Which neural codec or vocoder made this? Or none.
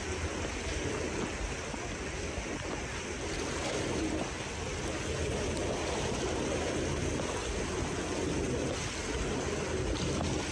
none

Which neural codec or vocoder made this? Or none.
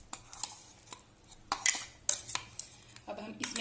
none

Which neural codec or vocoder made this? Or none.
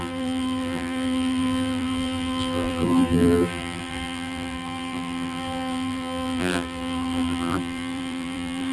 vocoder, BigVGAN v2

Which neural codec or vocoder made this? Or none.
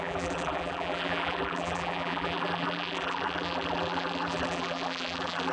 vocoder, BigVGAN v2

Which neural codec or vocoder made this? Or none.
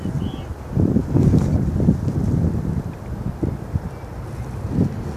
none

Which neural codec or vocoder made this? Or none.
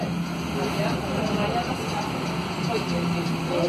none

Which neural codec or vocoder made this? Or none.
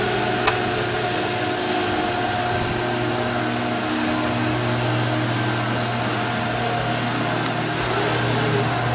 none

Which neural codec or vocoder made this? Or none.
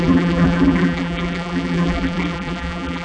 vocoder, BigVGAN v2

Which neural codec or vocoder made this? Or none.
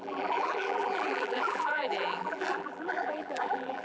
vocoder, BigVGAN v2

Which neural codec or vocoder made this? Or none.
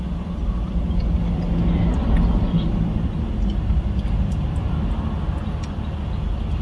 none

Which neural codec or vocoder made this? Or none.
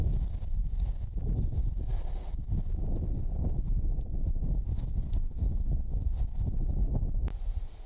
none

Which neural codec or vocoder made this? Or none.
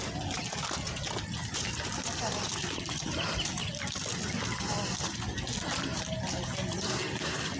none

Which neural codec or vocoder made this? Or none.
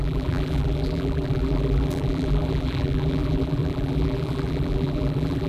vocoder, BigVGAN v2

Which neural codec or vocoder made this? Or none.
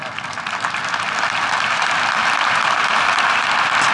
vocoder, BigVGAN v2